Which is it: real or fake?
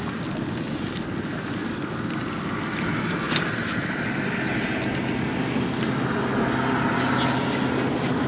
real